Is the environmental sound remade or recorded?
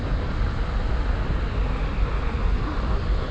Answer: recorded